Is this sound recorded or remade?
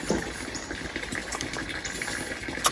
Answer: remade